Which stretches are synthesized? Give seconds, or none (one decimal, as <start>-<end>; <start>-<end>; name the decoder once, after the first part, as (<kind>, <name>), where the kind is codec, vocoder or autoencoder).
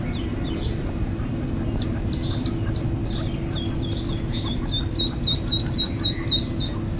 none